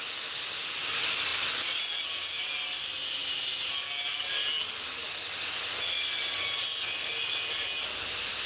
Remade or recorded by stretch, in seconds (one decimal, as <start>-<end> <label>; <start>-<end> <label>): 0.0-8.5 recorded